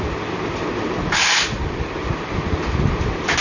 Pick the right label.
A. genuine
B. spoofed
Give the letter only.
A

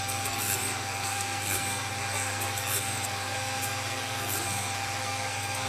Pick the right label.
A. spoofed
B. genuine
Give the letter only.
A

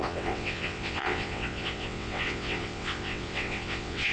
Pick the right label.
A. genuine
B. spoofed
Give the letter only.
B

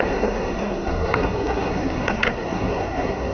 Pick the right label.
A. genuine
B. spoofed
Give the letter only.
B